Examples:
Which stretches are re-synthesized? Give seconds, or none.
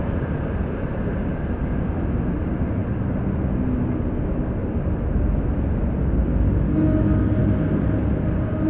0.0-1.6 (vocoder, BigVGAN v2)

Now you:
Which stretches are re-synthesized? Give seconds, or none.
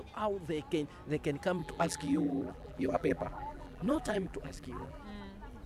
1.6-5.0 (vocoder, BigVGAN v2)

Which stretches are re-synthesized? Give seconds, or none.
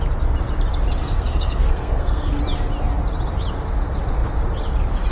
1.0-2.4 (codec, SNAC)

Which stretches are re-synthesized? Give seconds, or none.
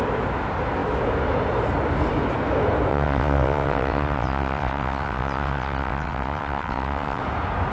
2.9-7.2 (vocoder, WaveNeXt)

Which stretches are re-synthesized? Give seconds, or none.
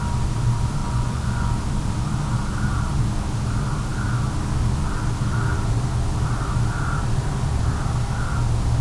0.8-1.5 (vocoder, Vocos)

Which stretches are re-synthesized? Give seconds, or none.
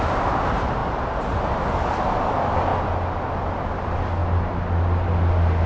0.0-2.7 (vocoder, BigVGAN v2); 3.3-4.2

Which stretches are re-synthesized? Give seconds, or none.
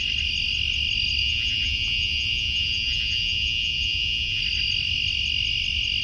1.2-4.4 (vocoder, Vocos)